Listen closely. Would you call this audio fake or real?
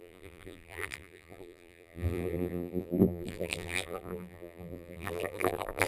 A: fake